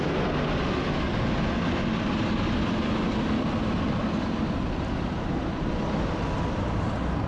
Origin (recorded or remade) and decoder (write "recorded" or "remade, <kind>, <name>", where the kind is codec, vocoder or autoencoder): recorded